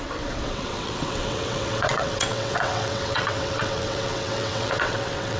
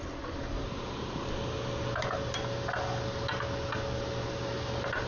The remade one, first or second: first